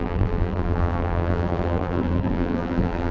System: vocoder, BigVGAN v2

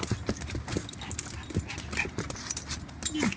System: none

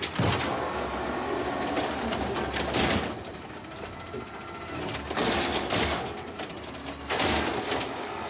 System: none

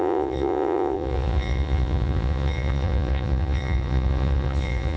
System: vocoder, Vocos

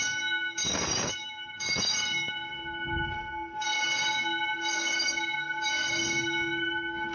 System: codec, DAC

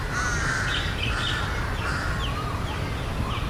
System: none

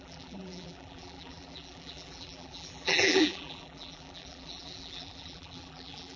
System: vocoder, BigVGAN v2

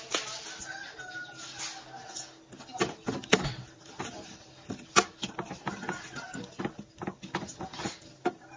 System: none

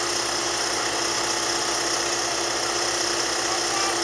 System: none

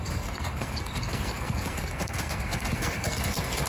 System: codec, SNAC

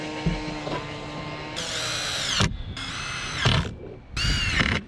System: none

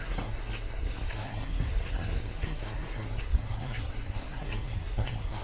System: codec, SNAC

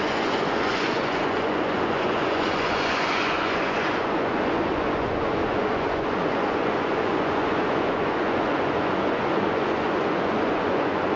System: vocoder, Vocos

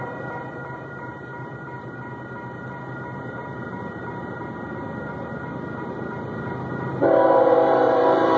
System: vocoder, BigVGAN v2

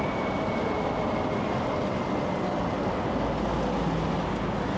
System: none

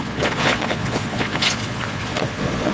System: vocoder, Vocos